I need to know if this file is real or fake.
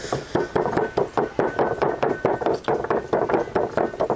real